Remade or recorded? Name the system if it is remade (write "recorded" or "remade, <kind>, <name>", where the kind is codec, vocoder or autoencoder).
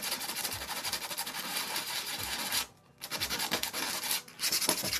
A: recorded